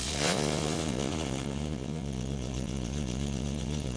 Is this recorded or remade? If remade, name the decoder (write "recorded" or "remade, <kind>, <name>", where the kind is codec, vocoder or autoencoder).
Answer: remade, vocoder, Vocos